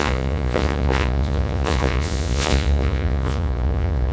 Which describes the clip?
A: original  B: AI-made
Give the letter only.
B